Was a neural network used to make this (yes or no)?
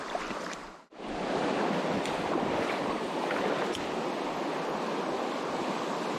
no